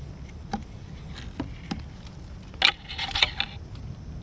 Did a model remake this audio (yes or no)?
no